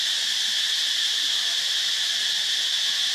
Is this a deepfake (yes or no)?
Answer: no